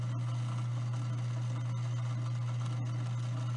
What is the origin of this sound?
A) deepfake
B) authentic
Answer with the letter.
B